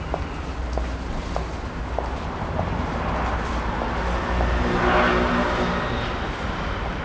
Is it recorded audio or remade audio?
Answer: recorded